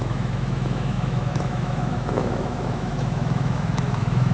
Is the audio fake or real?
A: fake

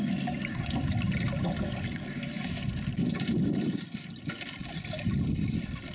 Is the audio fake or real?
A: real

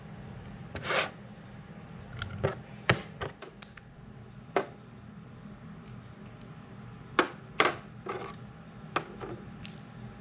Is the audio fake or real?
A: real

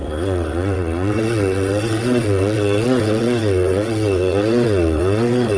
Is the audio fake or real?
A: fake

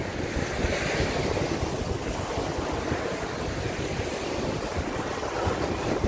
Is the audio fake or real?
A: real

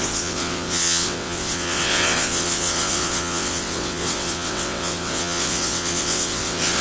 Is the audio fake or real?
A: fake